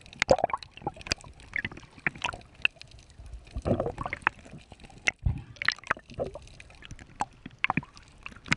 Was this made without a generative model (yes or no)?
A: yes